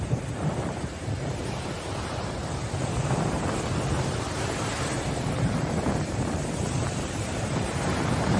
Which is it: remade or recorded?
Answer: remade